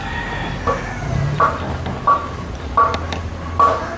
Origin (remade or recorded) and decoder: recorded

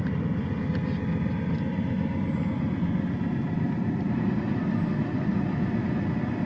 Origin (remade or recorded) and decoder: recorded